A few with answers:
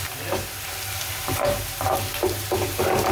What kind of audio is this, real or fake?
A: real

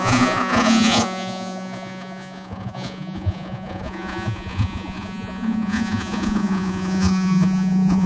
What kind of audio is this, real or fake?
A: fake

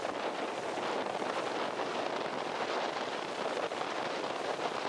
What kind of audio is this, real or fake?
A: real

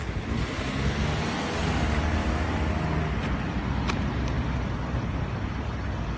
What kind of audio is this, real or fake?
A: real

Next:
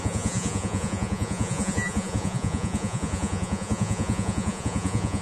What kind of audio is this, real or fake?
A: fake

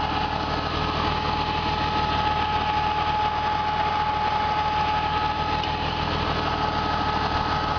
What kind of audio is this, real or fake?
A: real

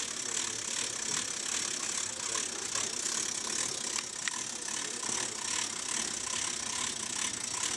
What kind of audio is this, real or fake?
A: real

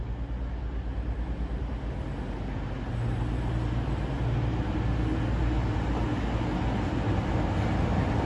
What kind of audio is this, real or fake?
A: real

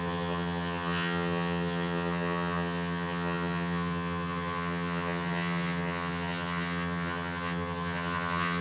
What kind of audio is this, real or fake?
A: fake